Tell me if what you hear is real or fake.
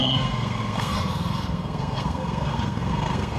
fake